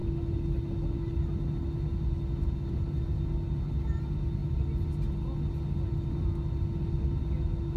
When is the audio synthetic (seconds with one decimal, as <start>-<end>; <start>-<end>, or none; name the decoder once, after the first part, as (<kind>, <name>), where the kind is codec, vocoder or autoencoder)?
none